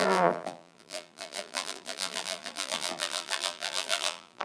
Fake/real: fake